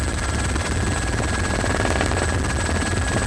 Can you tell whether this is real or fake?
real